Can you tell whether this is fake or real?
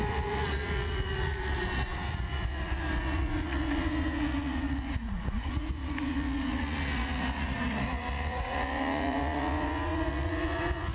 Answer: fake